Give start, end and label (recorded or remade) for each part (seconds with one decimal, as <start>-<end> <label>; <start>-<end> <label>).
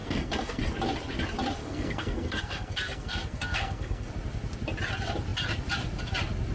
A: 0.0-0.6 remade; 0.6-1.6 recorded; 1.6-4.1 remade; 4.1-6.5 recorded